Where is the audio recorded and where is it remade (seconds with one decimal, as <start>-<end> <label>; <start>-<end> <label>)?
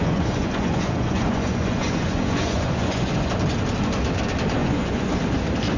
0.0-3.3 remade; 3.3-4.6 recorded; 4.6-5.1 remade; 5.1-5.8 recorded